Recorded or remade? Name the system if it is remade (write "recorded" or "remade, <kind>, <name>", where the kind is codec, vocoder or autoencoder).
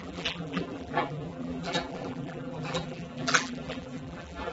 remade, vocoder, BigVGAN v2